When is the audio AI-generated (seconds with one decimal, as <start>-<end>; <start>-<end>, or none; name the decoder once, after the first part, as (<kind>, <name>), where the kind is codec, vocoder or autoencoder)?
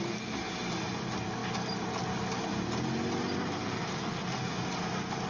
none